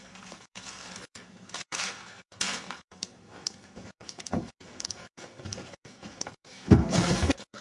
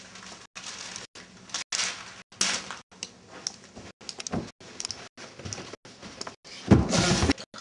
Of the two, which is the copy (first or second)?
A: first